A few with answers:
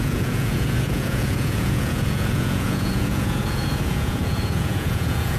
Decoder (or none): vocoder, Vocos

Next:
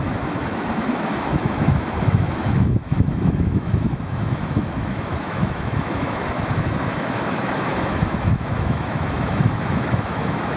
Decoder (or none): autoencoder, DAC-VAE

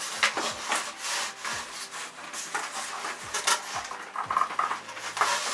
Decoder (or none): none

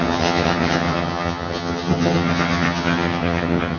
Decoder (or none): vocoder, HiFi-GAN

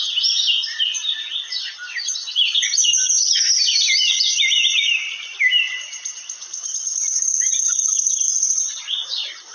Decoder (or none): vocoder, BigVGAN v2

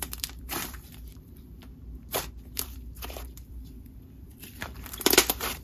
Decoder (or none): vocoder, BigVGAN v2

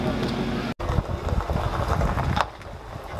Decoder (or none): none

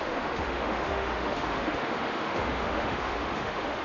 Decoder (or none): autoencoder, DAC-VAE